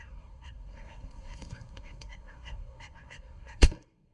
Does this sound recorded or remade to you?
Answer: remade